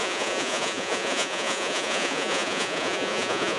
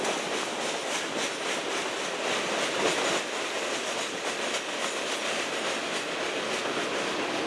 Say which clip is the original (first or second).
second